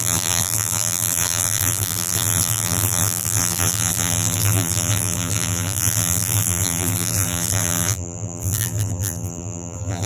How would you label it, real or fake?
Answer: fake